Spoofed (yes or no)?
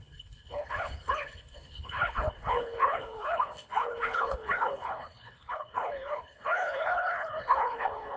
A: yes